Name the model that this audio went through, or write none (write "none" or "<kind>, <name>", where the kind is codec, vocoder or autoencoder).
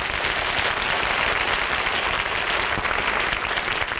none